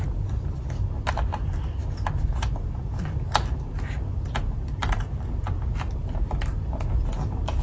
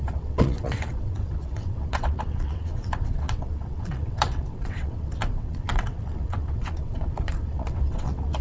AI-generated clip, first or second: second